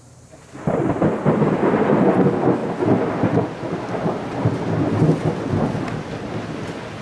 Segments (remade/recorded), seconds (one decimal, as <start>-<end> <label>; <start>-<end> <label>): 0.0-7.0 recorded